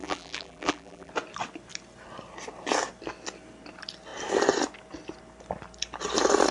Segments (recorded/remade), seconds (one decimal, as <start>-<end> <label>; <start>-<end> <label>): 0.0-1.1 remade; 1.1-6.5 recorded